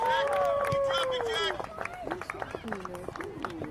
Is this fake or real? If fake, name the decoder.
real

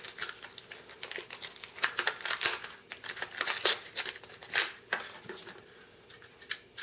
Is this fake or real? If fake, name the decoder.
real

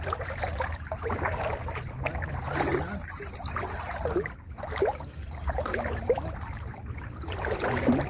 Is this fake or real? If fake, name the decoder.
real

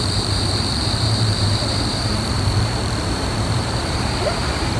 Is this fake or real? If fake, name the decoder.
fake, vocoder, BigVGAN v2